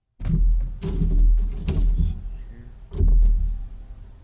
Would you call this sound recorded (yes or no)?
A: yes